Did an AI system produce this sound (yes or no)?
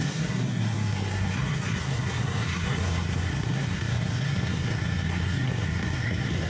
yes